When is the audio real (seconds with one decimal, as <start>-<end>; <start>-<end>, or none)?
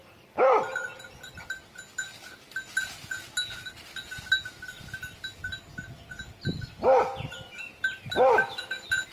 0.0-9.1